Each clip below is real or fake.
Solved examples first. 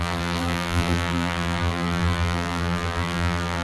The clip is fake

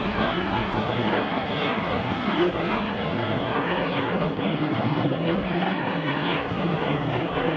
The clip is fake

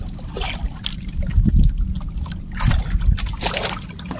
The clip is real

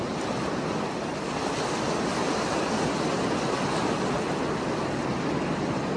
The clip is real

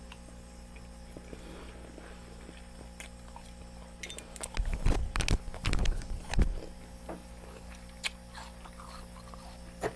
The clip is real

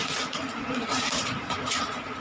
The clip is fake